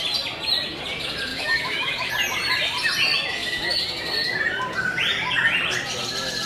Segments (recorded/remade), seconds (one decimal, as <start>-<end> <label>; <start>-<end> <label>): 0.0-1.3 recorded; 1.3-2.1 remade; 2.1-6.5 recorded